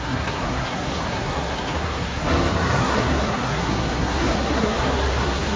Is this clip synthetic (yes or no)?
yes